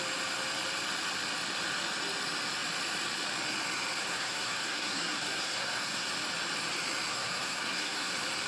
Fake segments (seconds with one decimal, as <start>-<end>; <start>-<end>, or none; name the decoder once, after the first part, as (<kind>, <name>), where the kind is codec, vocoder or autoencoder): 4.0-6.1 (codec, SNAC); 7.1-8.1